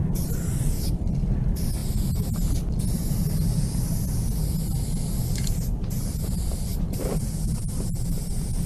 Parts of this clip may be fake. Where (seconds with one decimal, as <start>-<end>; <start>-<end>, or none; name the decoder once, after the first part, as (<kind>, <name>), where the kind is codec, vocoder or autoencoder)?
0.0-0.9 (vocoder, BigVGAN v2); 6.7-7.9